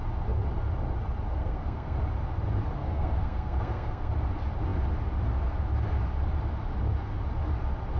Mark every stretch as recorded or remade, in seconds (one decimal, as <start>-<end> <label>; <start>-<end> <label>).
0.0-1.4 recorded; 1.4-2.0 remade; 2.0-2.8 recorded; 2.8-4.1 remade; 4.1-8.0 recorded